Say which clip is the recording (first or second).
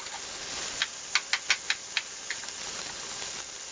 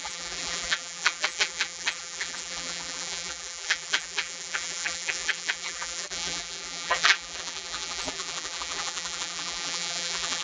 first